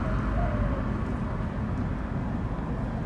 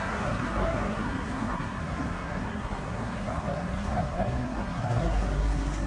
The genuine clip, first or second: first